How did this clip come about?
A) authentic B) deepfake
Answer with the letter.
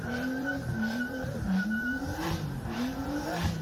B